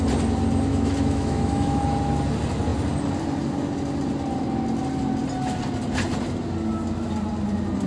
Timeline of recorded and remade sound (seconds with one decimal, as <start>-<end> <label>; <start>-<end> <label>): 0.0-0.7 recorded; 0.7-1.8 remade; 1.8-7.9 recorded